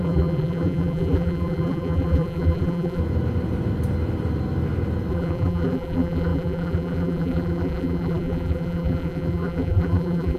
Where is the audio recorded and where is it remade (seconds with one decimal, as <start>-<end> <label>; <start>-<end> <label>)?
0.0-3.0 remade; 3.0-5.1 recorded; 5.1-10.4 remade